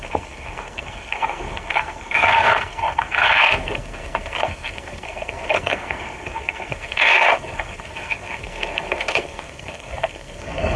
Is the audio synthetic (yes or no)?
yes